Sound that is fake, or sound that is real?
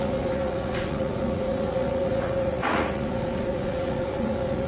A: fake